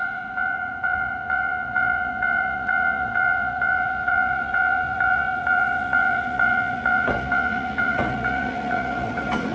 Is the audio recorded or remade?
remade